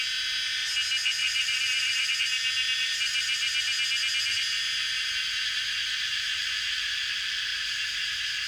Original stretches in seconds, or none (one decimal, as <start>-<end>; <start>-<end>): 0.0-1.2; 2.1-2.8; 3.7-7.5